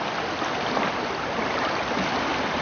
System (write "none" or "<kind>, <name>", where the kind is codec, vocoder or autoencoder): none